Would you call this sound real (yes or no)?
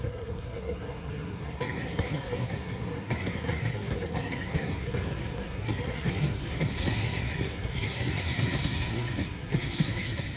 no